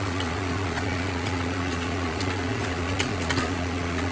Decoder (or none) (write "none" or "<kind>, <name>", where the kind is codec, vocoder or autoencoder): vocoder, Vocos